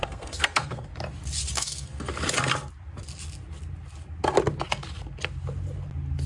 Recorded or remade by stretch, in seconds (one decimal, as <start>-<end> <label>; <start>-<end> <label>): 0.0-0.9 remade; 0.9-1.5 recorded; 1.5-2.1 remade; 2.1-6.3 recorded